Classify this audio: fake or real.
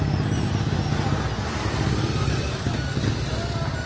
real